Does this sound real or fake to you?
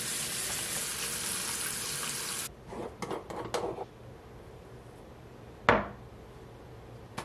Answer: real